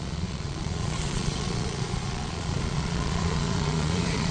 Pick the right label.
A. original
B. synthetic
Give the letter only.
B